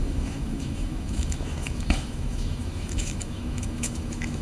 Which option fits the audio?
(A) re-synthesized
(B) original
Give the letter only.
A